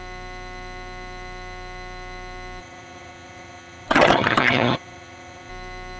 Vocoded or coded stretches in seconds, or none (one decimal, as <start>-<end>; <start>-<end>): 2.6-5.5